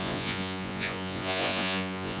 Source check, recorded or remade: remade